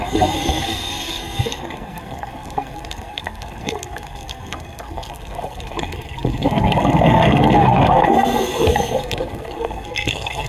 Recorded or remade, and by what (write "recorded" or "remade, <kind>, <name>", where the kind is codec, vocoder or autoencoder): remade, codec, SNAC